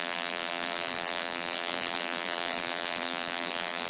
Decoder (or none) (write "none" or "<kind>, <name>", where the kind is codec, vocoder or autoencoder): vocoder, BigVGAN v2